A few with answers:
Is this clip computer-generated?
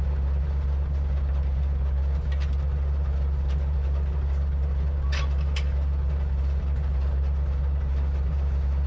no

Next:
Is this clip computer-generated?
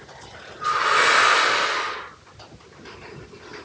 no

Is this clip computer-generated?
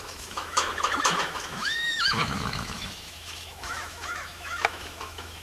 yes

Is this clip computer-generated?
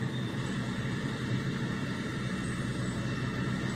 no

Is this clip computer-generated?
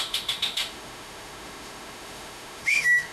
yes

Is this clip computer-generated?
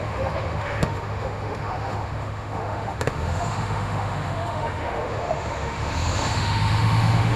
yes